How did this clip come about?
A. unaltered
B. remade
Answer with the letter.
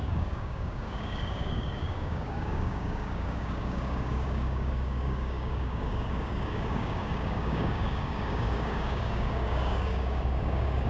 B